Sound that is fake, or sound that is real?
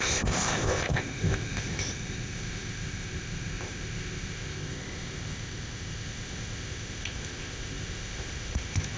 fake